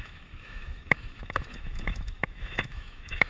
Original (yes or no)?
no